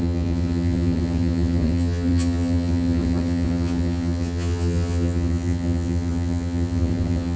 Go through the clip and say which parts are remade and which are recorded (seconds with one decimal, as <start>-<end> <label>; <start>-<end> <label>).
0.0-7.4 remade